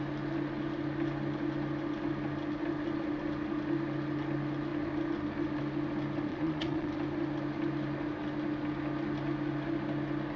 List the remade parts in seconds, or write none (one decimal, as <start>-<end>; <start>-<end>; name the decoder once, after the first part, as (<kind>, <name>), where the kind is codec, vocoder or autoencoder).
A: 6.3-6.9 (vocoder, Vocos)